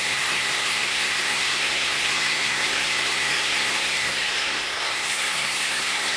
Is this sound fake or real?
fake